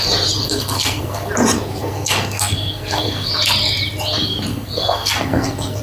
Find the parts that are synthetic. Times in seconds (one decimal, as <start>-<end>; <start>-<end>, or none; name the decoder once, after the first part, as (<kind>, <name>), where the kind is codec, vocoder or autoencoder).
0.4-1.3 (codec, SNAC); 1.8-3.3; 4.5-5.8